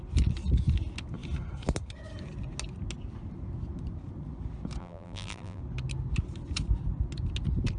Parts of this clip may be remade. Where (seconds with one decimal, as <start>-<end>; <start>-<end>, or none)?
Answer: 4.8-5.6